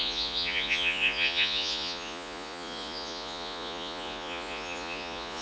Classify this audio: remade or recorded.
remade